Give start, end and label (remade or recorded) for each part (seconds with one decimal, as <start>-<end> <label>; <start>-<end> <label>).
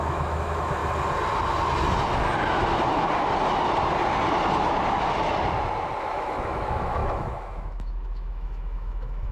0.0-0.8 remade; 0.8-6.0 recorded; 6.0-9.3 remade